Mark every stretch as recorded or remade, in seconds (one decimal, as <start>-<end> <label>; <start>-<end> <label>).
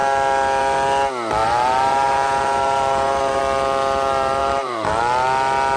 0.0-1.4 recorded; 1.4-3.4 remade; 3.4-4.4 recorded; 4.4-5.0 remade; 5.0-5.8 recorded